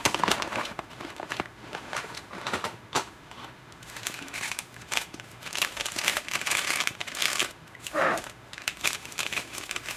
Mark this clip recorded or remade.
remade